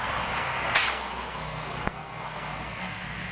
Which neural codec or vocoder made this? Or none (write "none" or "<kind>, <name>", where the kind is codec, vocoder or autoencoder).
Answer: codec, SNAC